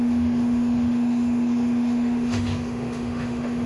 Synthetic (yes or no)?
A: yes